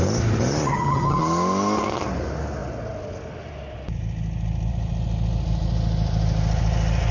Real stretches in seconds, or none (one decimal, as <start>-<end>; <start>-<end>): 0.0-0.7; 1.2-7.1